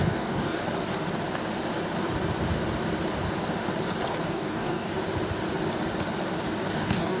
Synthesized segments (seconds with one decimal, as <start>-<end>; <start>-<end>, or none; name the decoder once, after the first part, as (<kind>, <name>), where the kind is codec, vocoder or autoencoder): 0.0-0.6 (codec, DAC); 4.2-4.9; 6.7-7.2